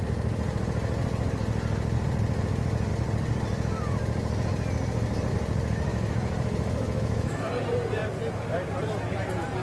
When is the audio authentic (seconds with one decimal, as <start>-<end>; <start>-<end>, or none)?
0.0-5.9; 7.5-9.6

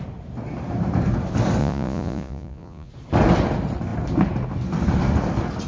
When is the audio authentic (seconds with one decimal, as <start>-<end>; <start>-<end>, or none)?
0.0-1.6; 2.9-5.7

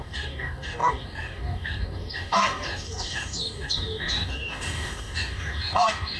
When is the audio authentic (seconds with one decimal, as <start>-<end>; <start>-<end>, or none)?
none